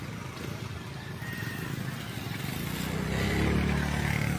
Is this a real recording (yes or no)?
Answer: yes